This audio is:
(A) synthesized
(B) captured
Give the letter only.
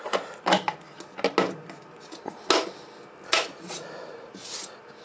B